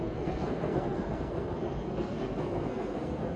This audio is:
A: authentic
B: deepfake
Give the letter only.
B